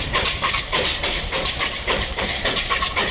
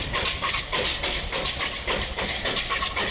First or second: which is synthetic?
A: first